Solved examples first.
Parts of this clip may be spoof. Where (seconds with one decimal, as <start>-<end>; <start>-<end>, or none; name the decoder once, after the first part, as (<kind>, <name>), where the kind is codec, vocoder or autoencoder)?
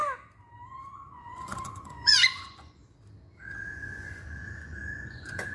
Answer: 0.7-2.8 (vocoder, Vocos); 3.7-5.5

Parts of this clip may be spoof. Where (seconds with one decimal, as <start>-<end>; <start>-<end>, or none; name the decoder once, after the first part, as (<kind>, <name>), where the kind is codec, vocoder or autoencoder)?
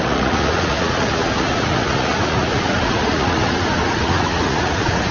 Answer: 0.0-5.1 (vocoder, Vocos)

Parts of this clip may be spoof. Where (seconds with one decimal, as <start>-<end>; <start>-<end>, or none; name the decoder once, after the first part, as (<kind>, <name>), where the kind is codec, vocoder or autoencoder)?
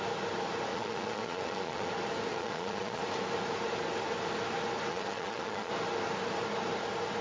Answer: 0.7-1.9 (vocoder, Vocos); 2.3-3.0; 4.9-5.7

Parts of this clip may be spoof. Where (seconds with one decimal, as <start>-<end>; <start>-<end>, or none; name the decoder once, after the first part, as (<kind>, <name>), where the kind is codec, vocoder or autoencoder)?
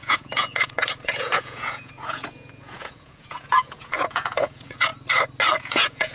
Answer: 0.0-4.9 (vocoder, Vocos); 5.6-6.1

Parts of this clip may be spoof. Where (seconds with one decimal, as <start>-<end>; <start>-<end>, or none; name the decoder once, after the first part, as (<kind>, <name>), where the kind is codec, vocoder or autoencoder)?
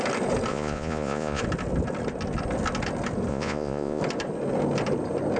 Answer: 0.5-1.4 (vocoder, Vocos); 3.3-4.0